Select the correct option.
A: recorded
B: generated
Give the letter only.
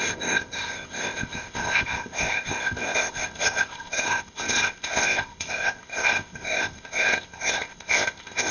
B